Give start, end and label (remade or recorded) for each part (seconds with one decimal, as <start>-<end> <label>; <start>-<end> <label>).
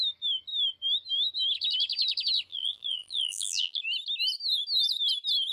0.0-2.5 recorded; 2.5-3.8 remade; 3.8-5.5 recorded